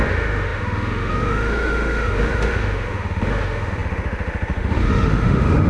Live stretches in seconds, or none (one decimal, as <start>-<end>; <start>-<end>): none